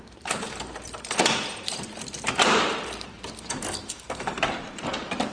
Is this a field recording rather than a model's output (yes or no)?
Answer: no